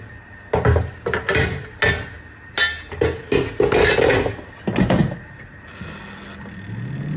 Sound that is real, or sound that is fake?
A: real